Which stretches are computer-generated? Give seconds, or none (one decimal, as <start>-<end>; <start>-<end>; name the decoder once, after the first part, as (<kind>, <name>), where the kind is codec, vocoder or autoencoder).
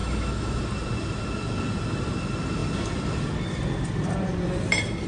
0.0-0.6 (autoencoder, DAC-VAE)